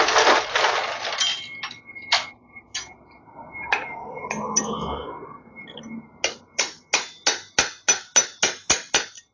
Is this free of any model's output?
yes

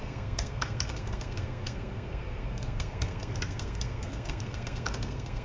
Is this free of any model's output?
no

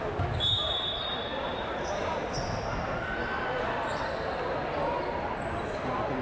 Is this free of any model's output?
yes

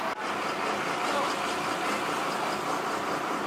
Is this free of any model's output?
yes